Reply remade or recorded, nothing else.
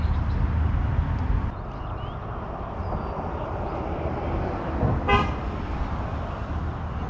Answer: recorded